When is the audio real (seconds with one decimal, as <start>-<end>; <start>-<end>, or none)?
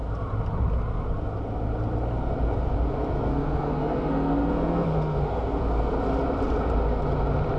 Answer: 0.0-3.1; 6.0-7.6